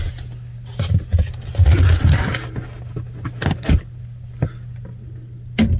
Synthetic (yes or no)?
no